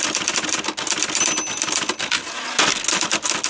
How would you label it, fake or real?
real